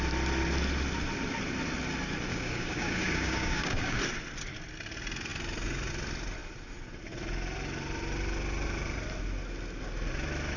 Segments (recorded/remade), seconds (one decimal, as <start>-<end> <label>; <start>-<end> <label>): 0.0-2.3 recorded; 2.3-4.0 remade; 4.0-10.6 recorded